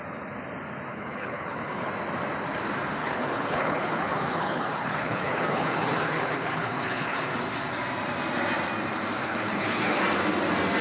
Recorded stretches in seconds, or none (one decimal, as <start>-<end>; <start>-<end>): 0.0-0.9; 1.9-3.0; 7.2-9.2; 10.0-10.8